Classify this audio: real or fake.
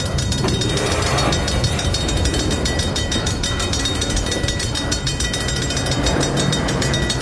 fake